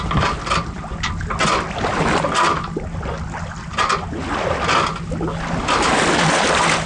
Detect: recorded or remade recorded